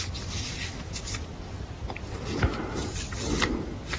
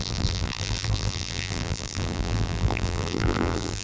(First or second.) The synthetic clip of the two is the second